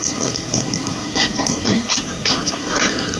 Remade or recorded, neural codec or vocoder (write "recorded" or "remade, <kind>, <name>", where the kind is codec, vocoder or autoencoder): remade, codec, SNAC